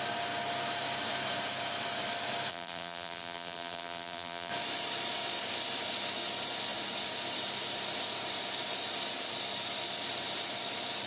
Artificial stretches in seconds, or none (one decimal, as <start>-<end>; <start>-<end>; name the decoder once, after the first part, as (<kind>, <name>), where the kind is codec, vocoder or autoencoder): 2.5-4.5 (vocoder, BigVGAN v2)